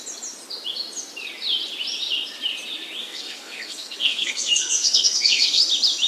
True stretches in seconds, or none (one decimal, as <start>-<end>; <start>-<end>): 0.0-3.0; 5.6-6.1